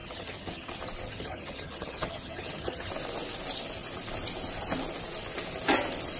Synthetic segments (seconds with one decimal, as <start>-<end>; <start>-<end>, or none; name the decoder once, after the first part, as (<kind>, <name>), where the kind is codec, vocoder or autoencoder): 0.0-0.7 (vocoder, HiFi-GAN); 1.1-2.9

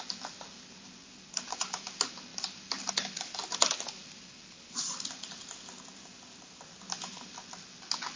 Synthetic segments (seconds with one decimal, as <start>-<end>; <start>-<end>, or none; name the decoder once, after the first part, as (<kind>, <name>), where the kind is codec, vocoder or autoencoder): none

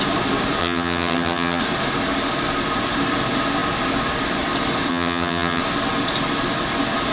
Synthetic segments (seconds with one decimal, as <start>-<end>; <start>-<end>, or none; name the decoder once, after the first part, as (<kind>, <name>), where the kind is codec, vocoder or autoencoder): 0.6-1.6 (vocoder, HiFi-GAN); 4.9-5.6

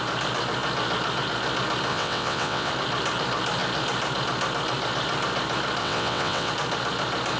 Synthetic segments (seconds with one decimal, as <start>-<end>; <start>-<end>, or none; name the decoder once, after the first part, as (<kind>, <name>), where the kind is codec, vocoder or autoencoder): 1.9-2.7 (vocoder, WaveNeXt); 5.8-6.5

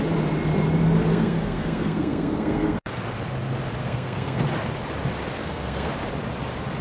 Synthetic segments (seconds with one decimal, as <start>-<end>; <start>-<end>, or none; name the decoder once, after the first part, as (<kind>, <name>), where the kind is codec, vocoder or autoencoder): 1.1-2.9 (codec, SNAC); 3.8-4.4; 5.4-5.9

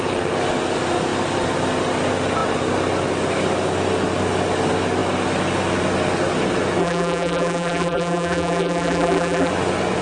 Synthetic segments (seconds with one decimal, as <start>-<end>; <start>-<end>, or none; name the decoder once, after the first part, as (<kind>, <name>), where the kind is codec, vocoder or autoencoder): 6.8-9.5 (vocoder, BigVGAN v2)

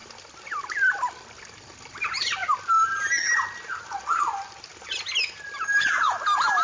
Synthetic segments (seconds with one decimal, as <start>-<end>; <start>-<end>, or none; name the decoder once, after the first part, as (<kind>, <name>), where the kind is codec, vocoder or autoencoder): 0.0-1.7 (vocoder, BigVGAN v2); 4.0-4.7